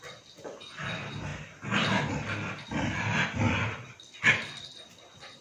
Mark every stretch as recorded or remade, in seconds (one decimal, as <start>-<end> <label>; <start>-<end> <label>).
0.0-5.4 recorded